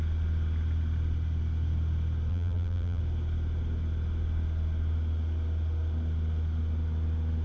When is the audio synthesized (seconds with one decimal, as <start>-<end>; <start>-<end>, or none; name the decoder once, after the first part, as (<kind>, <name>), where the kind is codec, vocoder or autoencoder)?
2.3-3.0 (vocoder, BigVGAN v2)